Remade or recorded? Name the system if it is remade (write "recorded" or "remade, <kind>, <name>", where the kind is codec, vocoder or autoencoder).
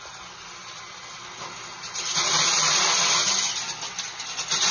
recorded